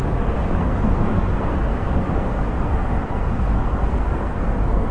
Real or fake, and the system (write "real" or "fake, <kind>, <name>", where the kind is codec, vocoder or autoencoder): fake, codec, SNAC